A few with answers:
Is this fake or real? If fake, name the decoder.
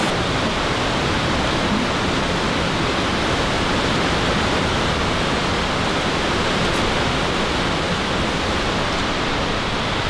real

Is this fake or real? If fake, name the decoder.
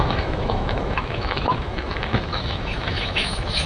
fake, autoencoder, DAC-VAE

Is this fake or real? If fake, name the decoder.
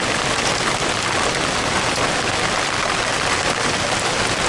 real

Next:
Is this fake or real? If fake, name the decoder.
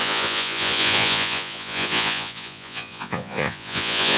fake, vocoder, Vocos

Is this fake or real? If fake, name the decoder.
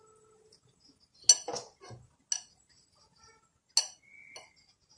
real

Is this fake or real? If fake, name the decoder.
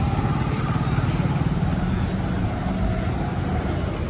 real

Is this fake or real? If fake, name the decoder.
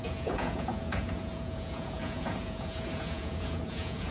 fake, vocoder, Vocos